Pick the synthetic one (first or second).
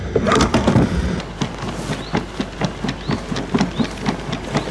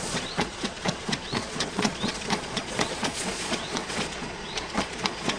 second